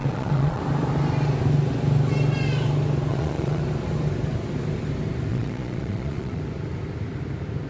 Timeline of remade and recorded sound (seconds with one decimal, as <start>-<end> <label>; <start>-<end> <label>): 0.0-0.6 remade; 0.6-3.1 recorded; 3.1-3.6 remade; 3.6-5.3 recorded; 5.3-6.4 remade; 6.4-7.7 recorded